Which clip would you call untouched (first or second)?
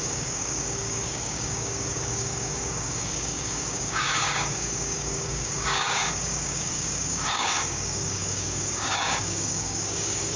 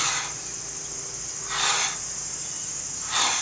second